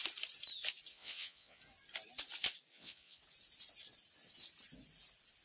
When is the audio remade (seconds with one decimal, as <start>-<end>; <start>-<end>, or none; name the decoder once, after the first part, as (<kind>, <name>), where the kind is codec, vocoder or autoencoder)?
0.9-1.6 (vocoder, Vocos); 2.7-3.2